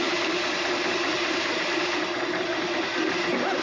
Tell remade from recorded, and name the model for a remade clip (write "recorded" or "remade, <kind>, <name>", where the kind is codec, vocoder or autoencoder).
recorded